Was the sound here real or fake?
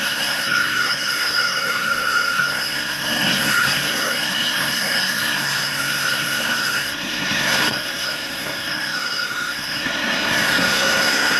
fake